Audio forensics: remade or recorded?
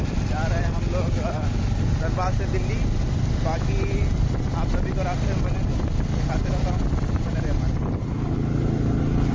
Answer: recorded